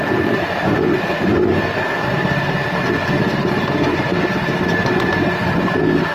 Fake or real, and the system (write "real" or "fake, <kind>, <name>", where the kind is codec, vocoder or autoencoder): real